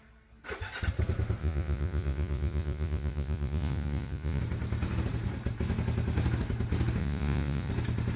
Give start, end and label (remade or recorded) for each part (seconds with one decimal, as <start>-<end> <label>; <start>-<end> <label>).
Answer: 0.0-1.4 recorded; 1.4-4.4 remade; 4.4-7.0 recorded; 7.0-7.7 remade; 7.7-8.2 recorded